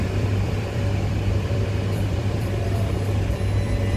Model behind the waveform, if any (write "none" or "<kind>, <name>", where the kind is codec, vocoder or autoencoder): vocoder, BigVGAN v2